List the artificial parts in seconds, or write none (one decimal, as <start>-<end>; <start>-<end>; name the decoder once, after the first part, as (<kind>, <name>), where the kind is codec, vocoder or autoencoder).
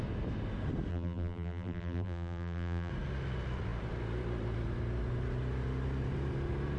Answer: 0.9-2.9 (vocoder, BigVGAN v2)